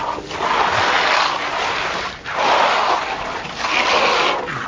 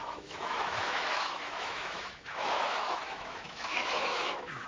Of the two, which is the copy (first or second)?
second